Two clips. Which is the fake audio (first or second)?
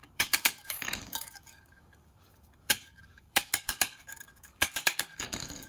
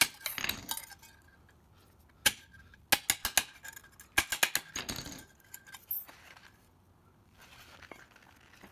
first